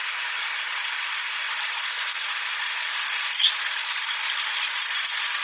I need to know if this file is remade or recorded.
recorded